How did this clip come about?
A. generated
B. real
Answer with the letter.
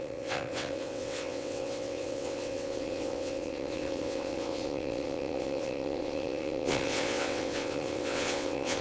A